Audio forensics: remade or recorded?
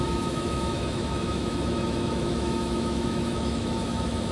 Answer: remade